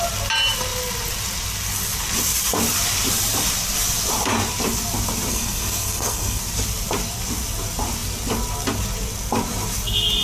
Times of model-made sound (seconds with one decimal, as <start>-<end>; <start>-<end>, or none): 5.3-6.4